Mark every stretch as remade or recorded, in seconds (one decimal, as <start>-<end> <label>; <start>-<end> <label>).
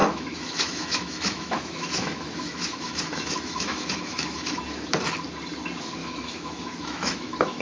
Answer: 0.0-4.6 remade; 4.6-6.0 recorded; 6.0-7.6 remade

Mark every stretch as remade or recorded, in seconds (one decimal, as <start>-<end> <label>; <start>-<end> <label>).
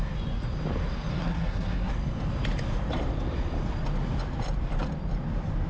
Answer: 0.0-1.1 recorded; 1.1-1.9 remade; 1.9-5.7 recorded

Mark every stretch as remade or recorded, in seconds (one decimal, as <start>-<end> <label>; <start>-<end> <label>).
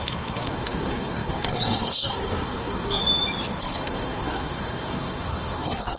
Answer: 0.0-3.0 remade; 3.0-3.6 recorded; 3.6-6.0 remade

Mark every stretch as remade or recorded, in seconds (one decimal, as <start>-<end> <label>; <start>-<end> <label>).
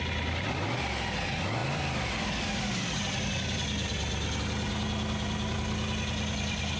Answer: 0.0-6.8 recorded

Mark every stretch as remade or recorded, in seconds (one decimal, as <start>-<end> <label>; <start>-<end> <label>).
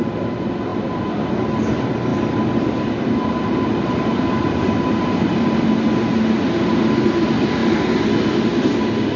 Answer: 0.0-0.7 recorded; 0.7-1.3 remade; 1.3-2.1 recorded; 2.1-5.6 remade; 5.6-9.2 recorded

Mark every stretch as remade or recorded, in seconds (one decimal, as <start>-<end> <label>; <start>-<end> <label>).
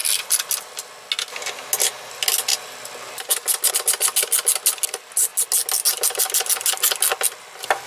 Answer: 0.0-7.9 recorded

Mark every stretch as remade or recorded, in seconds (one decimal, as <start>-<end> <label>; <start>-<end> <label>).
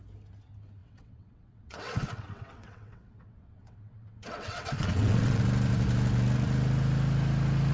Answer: 0.0-0.8 recorded; 0.8-5.4 remade; 5.4-7.7 recorded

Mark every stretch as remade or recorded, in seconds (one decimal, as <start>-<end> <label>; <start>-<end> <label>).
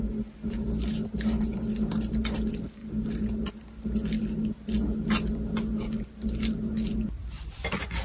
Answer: 0.0-8.0 recorded